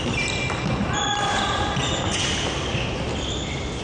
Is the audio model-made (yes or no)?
no